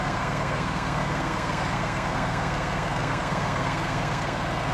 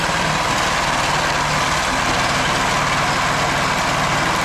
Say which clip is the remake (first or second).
first